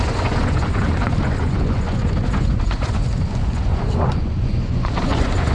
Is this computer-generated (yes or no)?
yes